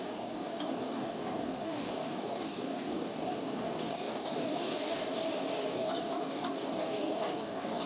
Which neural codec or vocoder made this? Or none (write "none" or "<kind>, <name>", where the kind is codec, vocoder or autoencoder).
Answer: codec, DAC